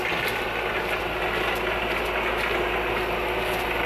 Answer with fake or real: real